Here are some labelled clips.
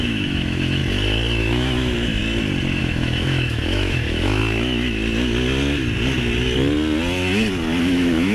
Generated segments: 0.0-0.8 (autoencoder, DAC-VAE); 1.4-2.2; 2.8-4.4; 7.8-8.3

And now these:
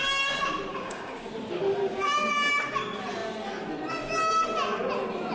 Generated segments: 0.7-1.3 (codec, DAC); 1.8-2.3

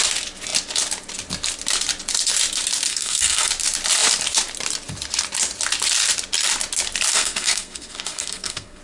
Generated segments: 2.9-3.5 (codec, SNAC); 7.1-8.8

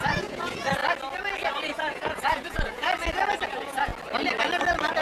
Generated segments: 0.0-0.8 (vocoder, Vocos); 1.5-2.9; 3.5-3.9

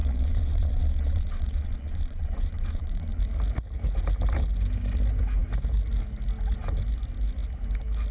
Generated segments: 0.0-3.2 (vocoder, Vocos)

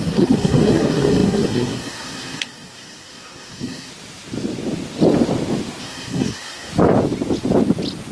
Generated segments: 0.0-3.9 (codec, SNAC); 5.8-6.7